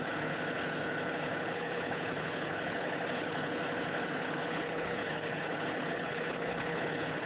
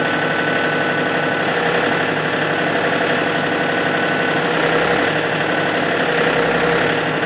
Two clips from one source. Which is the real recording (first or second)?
second